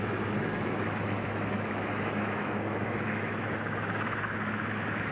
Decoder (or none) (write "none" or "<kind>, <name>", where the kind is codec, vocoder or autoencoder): autoencoder, DAC-VAE